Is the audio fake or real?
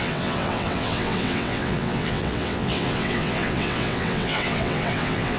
fake